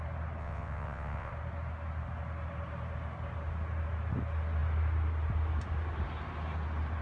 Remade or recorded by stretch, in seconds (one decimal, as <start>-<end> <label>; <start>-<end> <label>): 0.0-0.4 recorded; 0.4-1.3 remade; 1.3-7.0 recorded